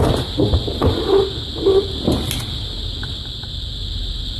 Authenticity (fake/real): real